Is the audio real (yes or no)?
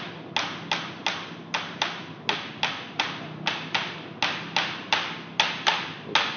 yes